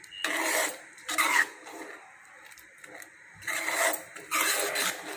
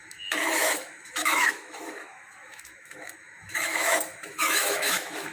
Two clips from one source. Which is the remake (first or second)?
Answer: second